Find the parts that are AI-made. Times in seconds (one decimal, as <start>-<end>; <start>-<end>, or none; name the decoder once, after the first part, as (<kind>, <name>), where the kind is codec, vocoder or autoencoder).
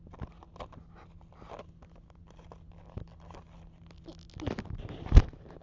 none